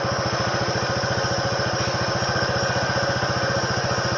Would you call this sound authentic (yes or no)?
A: yes